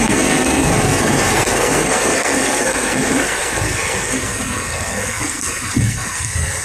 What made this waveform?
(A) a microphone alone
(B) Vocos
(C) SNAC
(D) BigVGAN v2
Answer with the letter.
C